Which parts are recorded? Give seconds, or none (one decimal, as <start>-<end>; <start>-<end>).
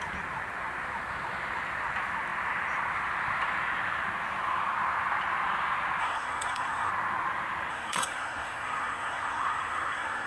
0.0-6.0; 6.9-7.7